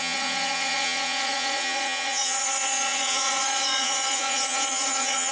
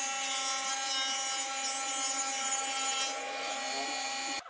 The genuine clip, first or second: second